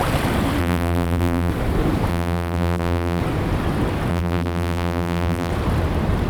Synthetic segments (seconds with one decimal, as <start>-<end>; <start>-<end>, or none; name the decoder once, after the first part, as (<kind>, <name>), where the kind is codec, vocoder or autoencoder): 0.6-1.5 (vocoder, BigVGAN v2); 2.1-3.2; 4.1-5.5